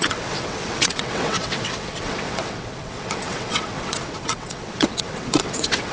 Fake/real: fake